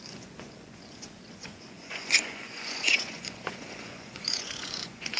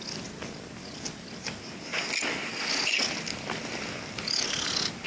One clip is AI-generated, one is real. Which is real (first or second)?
second